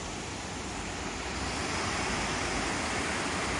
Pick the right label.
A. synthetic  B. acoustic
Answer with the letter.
B